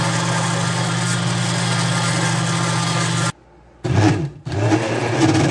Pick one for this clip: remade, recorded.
recorded